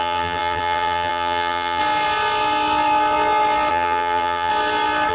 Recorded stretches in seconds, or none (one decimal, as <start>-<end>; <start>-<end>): 1.8-3.7; 4.5-5.1